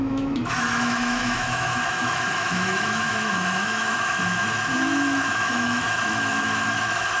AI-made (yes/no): yes